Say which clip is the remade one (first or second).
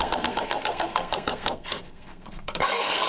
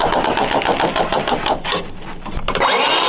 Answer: first